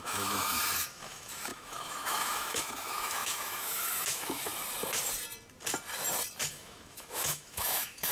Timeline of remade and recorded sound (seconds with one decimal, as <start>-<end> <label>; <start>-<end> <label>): 0.0-4.5 remade; 4.5-6.5 recorded; 6.5-8.1 remade